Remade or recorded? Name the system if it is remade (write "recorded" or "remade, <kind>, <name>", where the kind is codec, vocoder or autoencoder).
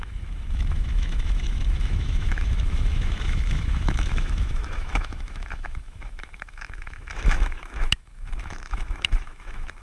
remade, autoencoder, DAC-VAE